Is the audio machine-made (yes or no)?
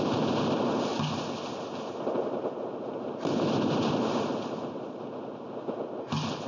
no